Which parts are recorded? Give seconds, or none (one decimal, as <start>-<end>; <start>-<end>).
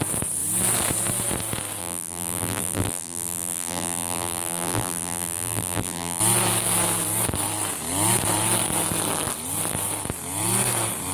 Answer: 0.0-1.8; 6.2-11.1